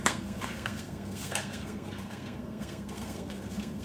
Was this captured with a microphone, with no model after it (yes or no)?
no